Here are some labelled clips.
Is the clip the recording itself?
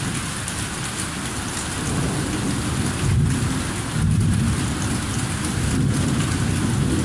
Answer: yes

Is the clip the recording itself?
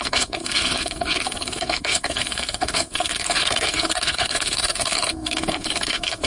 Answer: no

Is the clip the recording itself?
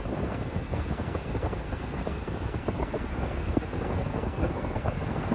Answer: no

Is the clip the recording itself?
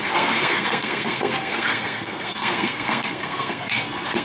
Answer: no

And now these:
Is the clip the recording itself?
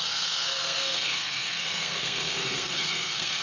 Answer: no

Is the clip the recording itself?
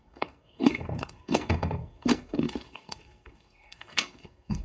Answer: no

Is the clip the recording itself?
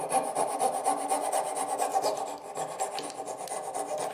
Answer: yes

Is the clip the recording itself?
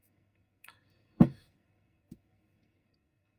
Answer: no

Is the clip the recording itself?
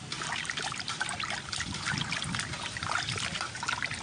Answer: yes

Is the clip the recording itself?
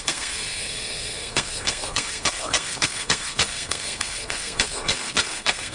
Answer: no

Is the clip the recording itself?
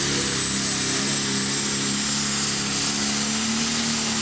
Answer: yes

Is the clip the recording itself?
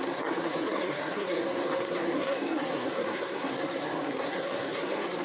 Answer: no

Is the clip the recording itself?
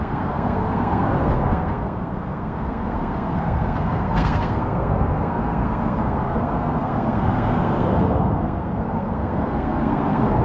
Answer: no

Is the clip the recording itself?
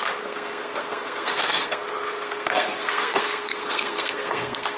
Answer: no